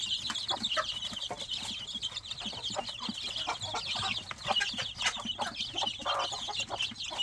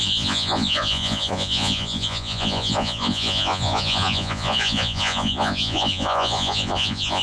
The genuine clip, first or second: first